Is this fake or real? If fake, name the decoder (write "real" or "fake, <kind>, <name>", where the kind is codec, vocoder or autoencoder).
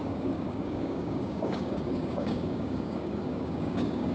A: fake, codec, DAC